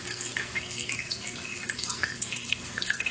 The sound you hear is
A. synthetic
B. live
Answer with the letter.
A